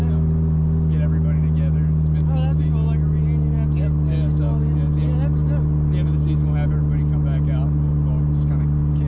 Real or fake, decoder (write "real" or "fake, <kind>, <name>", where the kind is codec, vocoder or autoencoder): real